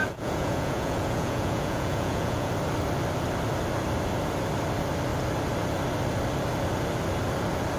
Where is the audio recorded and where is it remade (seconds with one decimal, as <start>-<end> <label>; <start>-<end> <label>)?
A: 0.0-2.5 remade; 2.5-7.8 recorded